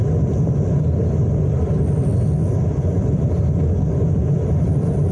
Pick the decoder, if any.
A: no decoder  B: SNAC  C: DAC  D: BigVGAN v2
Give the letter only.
A